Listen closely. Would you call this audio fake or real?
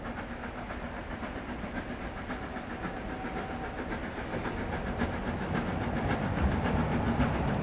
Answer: real